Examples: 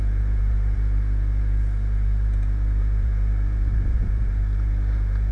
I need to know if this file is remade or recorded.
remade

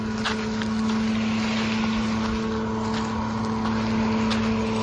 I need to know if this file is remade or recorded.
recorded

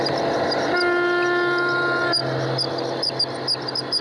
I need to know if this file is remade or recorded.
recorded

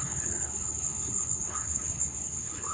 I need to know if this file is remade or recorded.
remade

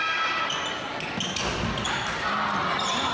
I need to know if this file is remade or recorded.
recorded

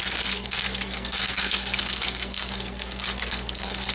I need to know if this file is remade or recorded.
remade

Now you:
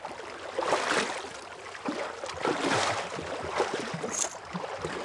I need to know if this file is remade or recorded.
recorded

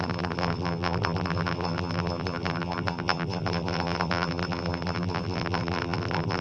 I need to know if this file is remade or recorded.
remade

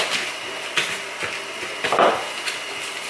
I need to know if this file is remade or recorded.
recorded